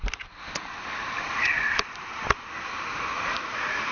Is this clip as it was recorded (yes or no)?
yes